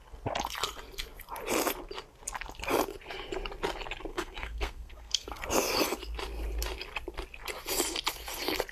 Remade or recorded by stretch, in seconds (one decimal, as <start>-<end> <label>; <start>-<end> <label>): 0.0-4.1 recorded; 4.1-5.4 remade; 5.4-8.7 recorded